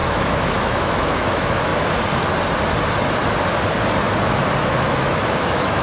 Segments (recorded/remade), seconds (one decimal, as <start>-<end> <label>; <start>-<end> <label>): 0.0-1.7 remade; 1.7-4.6 recorded; 4.6-5.8 remade